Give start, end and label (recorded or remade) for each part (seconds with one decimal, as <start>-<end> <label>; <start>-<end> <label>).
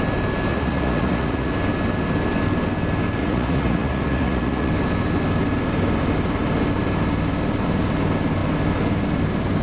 0.0-0.5 recorded; 0.5-1.5 remade; 1.5-3.2 recorded; 3.2-4.7 remade; 4.7-9.6 recorded